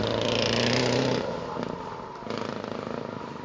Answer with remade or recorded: recorded